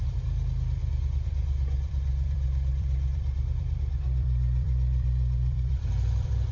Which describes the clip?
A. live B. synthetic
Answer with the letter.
B